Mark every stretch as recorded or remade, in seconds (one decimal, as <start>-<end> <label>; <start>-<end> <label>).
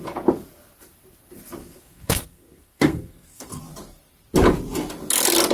0.0-1.6 recorded; 1.6-3.6 remade; 3.6-5.5 recorded